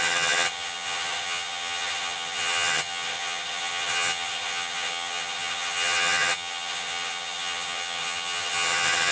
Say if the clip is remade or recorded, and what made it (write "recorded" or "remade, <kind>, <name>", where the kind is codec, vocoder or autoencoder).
remade, vocoder, HiFi-GAN